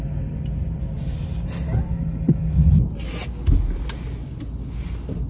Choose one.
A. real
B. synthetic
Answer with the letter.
A